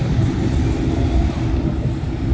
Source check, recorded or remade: recorded